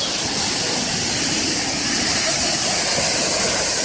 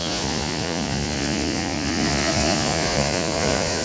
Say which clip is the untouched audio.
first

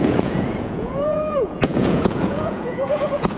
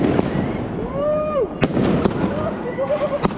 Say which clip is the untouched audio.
second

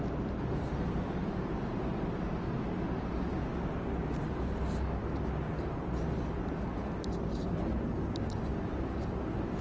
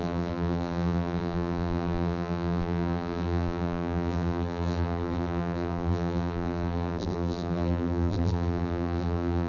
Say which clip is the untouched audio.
first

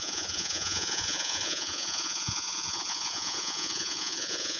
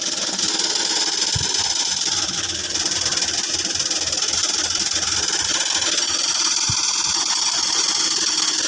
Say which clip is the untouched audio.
second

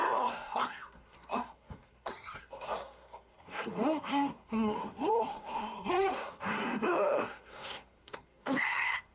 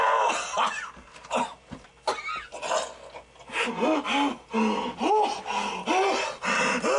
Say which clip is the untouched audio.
second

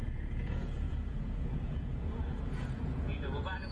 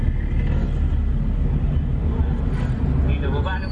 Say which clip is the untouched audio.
second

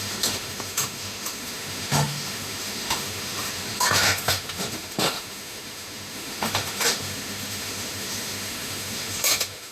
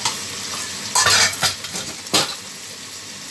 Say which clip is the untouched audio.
second